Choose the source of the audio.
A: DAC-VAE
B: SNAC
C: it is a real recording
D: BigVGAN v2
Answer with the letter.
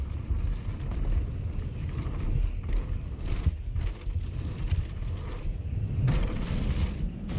C